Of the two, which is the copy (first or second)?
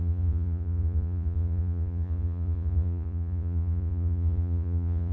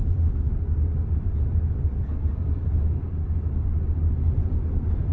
first